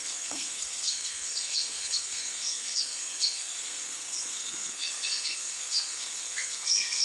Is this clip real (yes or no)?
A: no